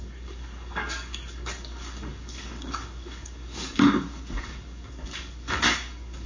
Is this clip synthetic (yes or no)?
yes